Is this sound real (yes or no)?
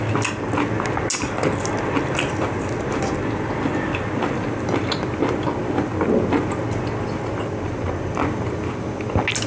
yes